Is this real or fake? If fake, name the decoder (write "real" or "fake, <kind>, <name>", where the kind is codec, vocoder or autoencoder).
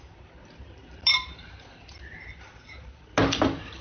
real